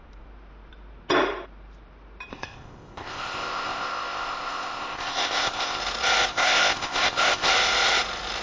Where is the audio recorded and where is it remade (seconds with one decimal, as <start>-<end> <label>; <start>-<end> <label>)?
0.0-2.3 recorded; 2.3-5.8 remade; 5.8-6.3 recorded; 6.3-7.5 remade; 7.5-8.4 recorded